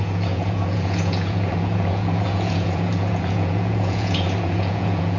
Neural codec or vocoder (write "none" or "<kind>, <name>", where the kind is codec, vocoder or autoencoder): vocoder, Vocos